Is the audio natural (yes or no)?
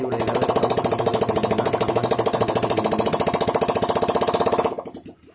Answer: yes